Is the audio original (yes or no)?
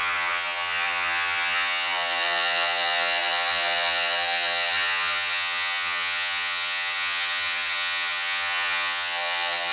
no